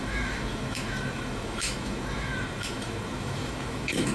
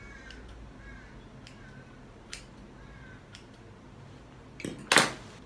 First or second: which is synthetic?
first